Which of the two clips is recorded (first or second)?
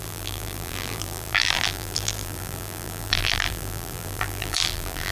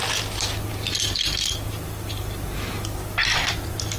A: second